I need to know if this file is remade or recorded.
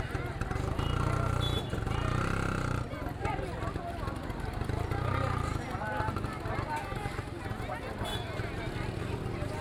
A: recorded